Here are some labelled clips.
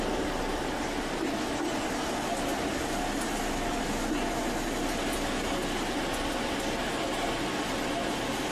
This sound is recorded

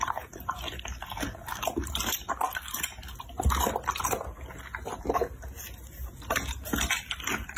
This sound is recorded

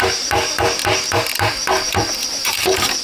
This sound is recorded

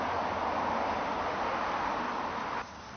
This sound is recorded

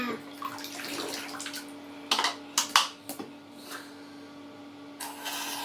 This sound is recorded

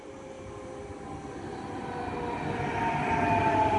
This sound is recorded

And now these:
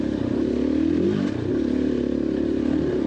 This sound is recorded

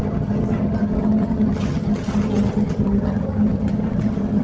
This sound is remade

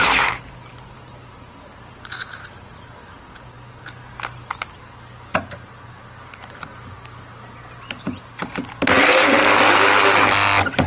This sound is recorded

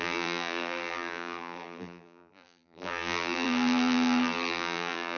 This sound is remade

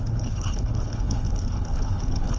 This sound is remade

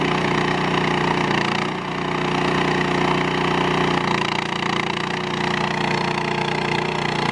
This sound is recorded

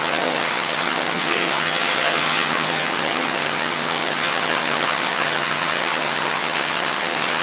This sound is remade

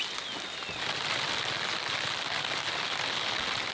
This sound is recorded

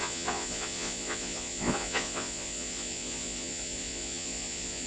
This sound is remade